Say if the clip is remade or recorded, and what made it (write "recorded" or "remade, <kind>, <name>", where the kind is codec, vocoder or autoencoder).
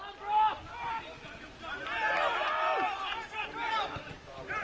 recorded